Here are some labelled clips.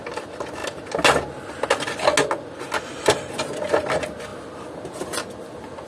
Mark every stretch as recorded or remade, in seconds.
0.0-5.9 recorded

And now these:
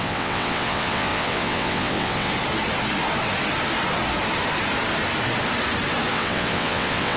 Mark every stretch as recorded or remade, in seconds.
0.0-2.3 remade; 2.3-6.1 recorded; 6.1-7.2 remade

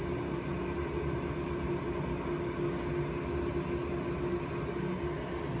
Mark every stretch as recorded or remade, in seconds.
0.0-5.6 recorded

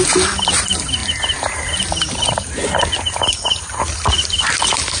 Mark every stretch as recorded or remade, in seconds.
0.0-5.0 recorded